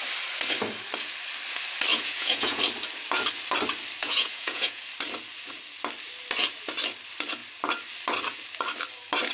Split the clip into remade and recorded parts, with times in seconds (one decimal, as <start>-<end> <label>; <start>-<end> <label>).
0.0-1.9 recorded; 1.9-2.6 remade; 2.6-4.0 recorded; 4.0-4.8 remade; 4.8-9.3 recorded